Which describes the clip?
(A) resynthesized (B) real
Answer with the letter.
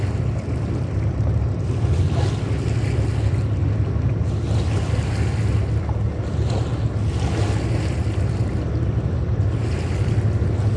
B